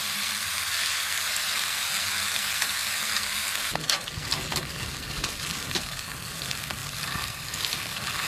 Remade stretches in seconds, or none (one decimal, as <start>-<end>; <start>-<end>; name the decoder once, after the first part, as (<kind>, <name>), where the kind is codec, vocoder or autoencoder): 0.0-8.3 (codec, SNAC)